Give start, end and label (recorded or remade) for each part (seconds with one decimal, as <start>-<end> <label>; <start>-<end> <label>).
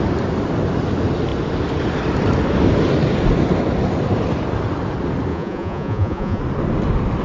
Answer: 0.0-5.3 recorded; 5.3-6.4 remade; 6.4-7.2 recorded